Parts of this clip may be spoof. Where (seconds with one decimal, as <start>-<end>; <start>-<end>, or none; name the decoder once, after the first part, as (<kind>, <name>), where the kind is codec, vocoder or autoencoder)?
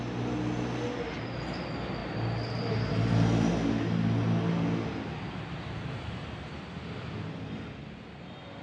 none